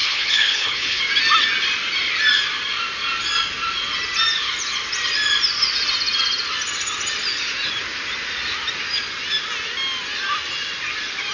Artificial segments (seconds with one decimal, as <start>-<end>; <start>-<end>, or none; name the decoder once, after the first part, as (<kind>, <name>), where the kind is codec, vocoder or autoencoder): 0.0-1.0 (codec, HILCodec)